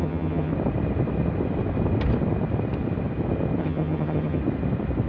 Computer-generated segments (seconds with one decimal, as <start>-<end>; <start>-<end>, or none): 0.0-0.5; 3.6-4.4